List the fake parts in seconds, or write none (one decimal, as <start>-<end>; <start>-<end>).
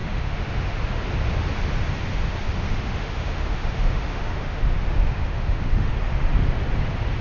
0.0-1.0; 2.1-5.9